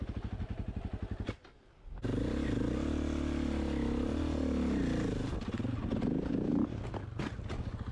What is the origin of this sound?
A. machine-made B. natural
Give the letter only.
B